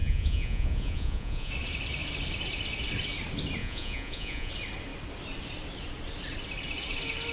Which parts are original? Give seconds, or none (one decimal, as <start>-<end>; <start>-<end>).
1.5-3.6; 4.5-7.3